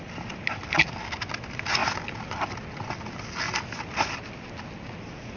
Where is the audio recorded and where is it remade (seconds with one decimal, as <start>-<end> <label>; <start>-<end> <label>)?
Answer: 0.0-5.4 recorded